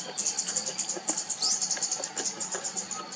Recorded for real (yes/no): yes